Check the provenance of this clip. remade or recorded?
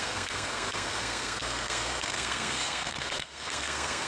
remade